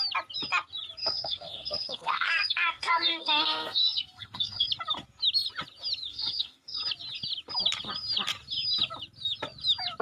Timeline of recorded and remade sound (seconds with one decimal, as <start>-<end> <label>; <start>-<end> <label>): 0.0-1.0 recorded; 1.0-4.7 remade; 4.7-6.1 recorded; 6.1-6.8 remade; 6.8-10.0 recorded